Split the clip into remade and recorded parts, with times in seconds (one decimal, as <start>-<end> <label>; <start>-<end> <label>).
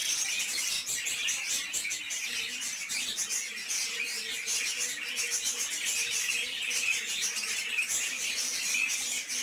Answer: 0.0-9.4 recorded